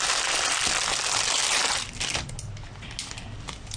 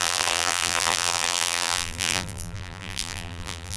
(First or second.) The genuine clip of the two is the first